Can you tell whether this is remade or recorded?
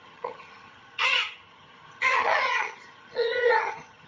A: remade